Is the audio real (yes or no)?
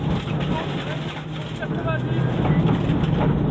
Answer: yes